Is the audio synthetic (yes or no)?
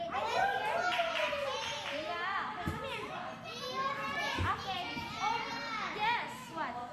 no